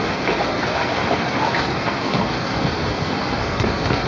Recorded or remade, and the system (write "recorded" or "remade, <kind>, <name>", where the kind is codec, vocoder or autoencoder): remade, codec, SNAC